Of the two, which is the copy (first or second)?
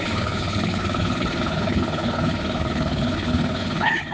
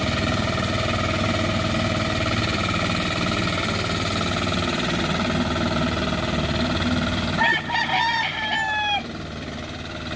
first